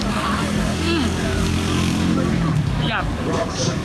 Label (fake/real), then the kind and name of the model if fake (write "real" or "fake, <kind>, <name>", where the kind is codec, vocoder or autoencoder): fake, codec, DAC